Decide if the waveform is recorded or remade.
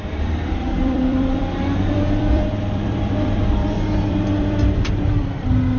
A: remade